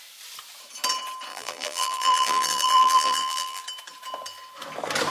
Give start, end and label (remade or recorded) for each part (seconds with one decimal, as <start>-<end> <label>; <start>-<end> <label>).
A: 0.0-1.3 recorded; 1.3-3.6 remade; 3.6-5.1 recorded